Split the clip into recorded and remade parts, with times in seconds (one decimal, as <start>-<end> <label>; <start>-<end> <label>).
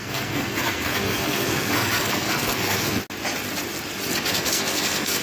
0.0-3.0 remade; 3.0-4.3 recorded; 4.3-5.2 remade